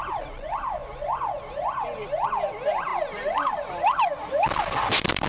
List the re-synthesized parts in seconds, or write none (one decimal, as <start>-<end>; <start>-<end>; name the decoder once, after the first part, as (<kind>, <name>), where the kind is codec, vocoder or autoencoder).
2.9-3.7 (vocoder, BigVGAN v2)